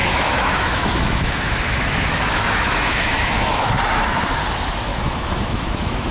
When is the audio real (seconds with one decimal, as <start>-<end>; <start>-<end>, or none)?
3.7-4.9